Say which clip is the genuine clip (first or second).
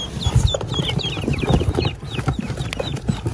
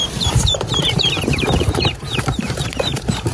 first